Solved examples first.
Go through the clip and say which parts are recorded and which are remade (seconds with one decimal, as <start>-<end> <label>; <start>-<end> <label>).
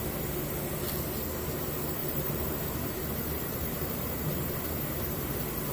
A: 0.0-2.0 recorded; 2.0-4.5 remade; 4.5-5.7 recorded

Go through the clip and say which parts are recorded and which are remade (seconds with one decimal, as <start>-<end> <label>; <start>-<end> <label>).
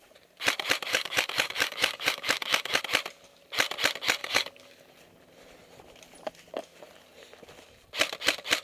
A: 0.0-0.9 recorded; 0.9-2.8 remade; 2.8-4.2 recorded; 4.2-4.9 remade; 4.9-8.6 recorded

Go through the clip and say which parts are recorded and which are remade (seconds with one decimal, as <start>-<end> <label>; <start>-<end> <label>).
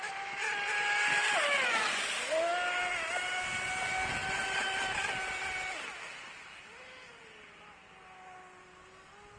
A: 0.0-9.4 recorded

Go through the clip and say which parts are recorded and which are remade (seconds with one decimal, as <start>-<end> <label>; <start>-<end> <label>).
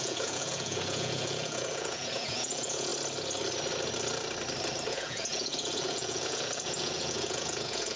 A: 0.0-2.9 remade; 2.9-4.9 recorded; 4.9-8.0 remade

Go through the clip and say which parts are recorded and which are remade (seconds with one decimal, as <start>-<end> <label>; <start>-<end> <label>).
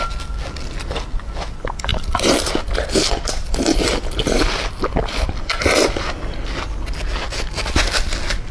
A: 0.0-8.5 recorded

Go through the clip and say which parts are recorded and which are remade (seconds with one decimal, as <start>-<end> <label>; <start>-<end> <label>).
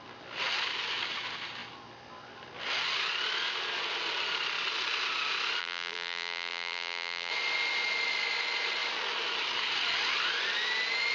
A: 0.0-5.6 recorded; 5.6-7.3 remade; 7.3-11.1 recorded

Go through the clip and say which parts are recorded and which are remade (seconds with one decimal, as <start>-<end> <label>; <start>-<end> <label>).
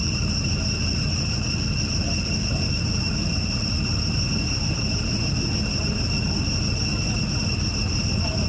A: 0.0-3.7 remade; 3.7-8.5 recorded